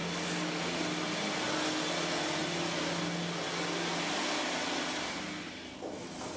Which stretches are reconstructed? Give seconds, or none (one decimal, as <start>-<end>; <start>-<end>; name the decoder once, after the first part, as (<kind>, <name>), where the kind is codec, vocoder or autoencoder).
none